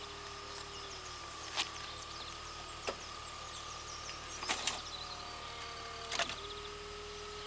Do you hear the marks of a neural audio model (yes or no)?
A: no